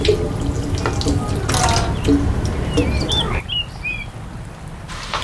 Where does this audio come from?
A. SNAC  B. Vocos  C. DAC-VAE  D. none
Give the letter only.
D